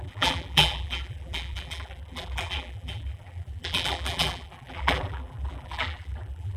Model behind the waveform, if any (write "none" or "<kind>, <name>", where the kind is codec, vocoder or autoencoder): vocoder, BigVGAN v2